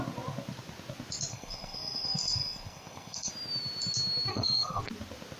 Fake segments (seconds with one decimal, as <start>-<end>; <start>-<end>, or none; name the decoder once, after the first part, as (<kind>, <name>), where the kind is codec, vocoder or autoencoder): 1.3-3.3 (codec, SNAC); 4.3-4.8